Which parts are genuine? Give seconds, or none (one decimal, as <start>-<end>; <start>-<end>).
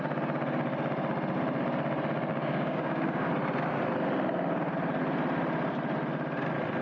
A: 0.0-2.3; 3.3-6.8